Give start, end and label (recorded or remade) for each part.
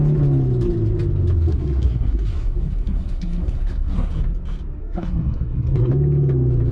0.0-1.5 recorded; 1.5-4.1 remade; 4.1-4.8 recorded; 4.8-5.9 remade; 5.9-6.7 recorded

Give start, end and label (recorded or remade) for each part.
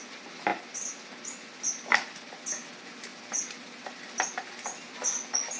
0.0-5.6 recorded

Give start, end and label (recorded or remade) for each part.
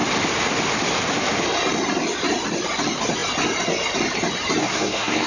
0.0-4.6 recorded; 4.6-5.3 remade